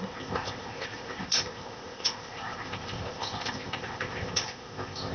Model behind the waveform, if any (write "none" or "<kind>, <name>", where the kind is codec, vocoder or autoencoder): codec, ZipCodec